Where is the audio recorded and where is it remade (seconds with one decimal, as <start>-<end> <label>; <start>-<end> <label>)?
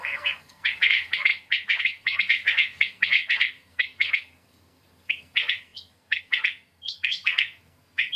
0.0-8.2 remade